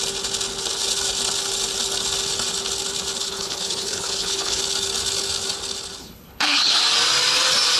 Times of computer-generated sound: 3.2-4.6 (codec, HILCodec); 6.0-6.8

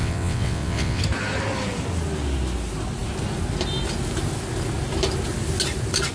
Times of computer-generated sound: 0.0-1.0 (vocoder, WaveNeXt)

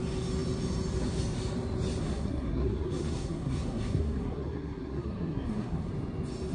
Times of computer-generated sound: 2.0-5.9 (codec, SNAC)

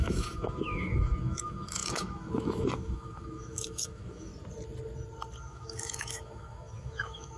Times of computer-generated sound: 0.0-4.3 (autoencoder, DAC-VAE); 5.4-7.4

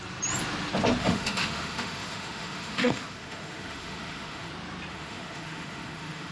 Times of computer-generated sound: 1.0-4.5 (autoencoder, DAC-VAE); 4.9-6.3